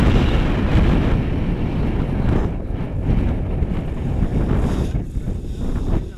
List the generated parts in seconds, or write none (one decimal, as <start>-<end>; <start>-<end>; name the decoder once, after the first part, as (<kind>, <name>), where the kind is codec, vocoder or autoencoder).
none